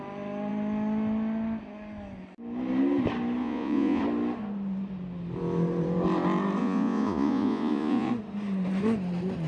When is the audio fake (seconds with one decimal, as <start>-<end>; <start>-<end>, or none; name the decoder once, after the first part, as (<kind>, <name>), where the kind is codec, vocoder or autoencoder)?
3.4-4.0 (vocoder, Vocos); 6.6-8.1